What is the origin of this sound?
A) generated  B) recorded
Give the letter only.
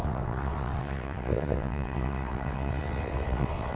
A